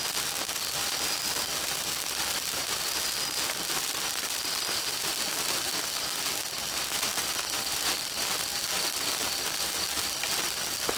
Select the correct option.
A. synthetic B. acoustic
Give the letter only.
B